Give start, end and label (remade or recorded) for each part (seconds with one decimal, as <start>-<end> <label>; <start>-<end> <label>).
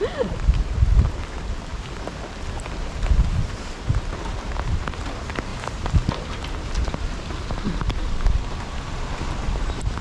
0.0-5.5 remade; 5.5-6.1 recorded; 6.1-10.0 remade